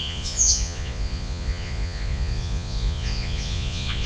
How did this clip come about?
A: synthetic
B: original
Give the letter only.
A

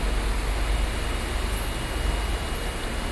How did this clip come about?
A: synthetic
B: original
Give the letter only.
B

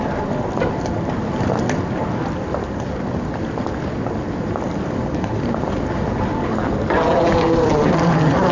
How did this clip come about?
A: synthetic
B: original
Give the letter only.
B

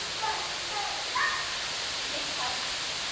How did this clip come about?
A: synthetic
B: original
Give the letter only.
B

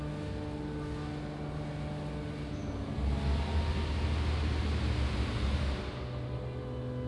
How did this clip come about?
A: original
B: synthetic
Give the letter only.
A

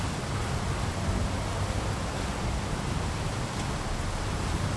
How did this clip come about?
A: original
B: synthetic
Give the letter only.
A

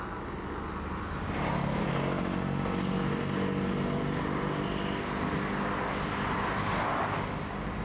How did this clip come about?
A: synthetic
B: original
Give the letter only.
B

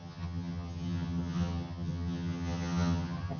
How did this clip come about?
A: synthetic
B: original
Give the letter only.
A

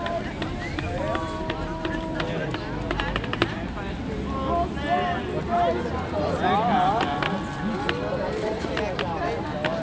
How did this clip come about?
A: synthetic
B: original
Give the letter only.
B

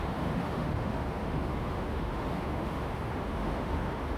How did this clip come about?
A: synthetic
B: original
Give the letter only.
A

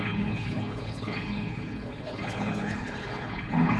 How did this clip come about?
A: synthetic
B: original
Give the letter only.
A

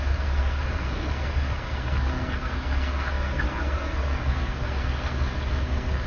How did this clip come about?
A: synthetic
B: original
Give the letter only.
A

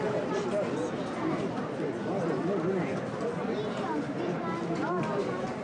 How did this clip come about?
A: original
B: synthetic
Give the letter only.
A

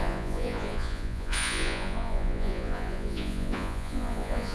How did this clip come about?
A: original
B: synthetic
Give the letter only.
B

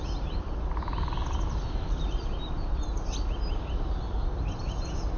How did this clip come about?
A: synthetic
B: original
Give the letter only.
B